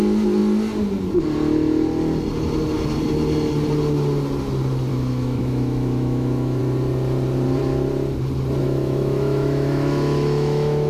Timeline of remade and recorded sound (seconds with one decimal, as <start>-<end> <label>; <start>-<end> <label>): 0.0-4.9 recorded; 4.9-6.6 remade; 6.6-8.6 recorded; 8.6-10.9 remade